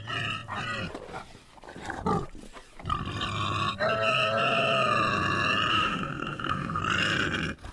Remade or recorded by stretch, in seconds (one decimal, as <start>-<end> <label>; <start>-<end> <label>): 0.0-5.7 recorded; 5.7-6.8 remade; 6.8-7.7 recorded